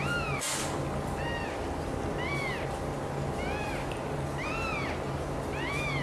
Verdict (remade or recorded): recorded